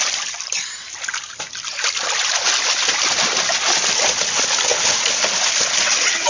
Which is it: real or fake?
real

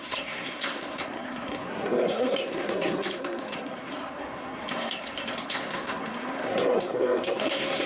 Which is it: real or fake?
fake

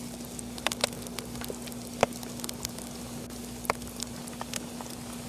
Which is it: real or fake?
real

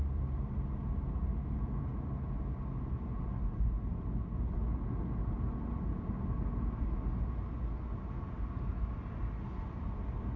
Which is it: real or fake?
real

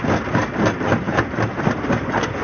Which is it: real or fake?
real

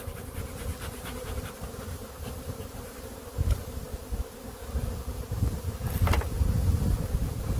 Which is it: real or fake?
real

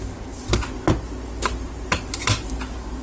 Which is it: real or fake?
real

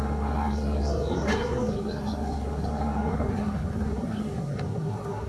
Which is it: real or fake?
fake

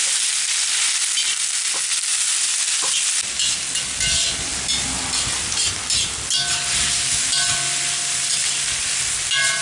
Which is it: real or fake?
real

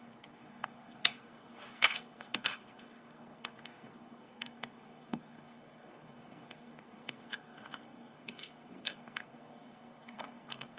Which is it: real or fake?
fake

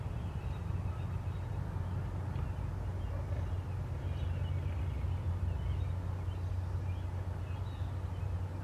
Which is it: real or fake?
real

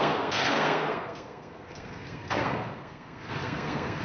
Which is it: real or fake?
fake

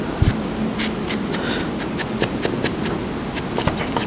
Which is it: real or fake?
real